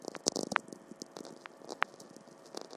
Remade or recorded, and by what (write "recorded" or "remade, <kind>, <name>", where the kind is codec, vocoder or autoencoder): recorded